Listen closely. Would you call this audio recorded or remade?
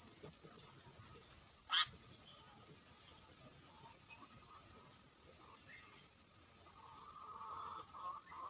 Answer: recorded